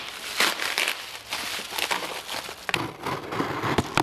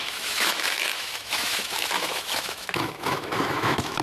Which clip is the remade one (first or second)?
second